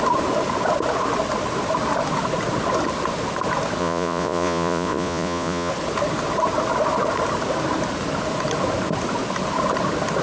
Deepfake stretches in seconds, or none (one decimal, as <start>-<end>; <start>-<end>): 3.8-5.7